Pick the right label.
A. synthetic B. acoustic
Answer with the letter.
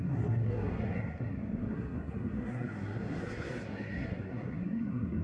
A